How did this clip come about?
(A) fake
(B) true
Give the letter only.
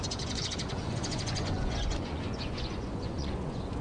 A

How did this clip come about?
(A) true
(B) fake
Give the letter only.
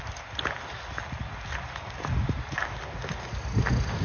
A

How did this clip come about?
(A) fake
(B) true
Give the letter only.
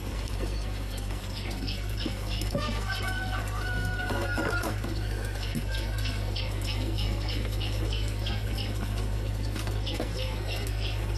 A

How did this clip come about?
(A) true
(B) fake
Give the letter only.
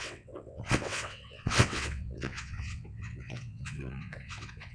B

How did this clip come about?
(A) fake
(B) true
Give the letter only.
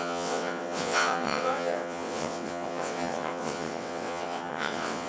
A